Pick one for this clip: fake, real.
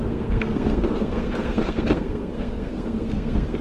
fake